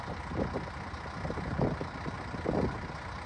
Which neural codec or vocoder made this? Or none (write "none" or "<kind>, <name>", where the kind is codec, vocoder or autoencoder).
none